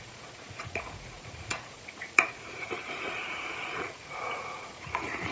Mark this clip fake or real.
fake